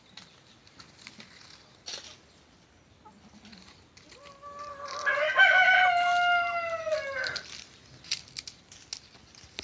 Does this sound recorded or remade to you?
recorded